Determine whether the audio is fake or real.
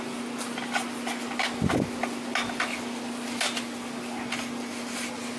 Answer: real